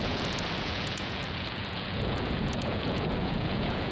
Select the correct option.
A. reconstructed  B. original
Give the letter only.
A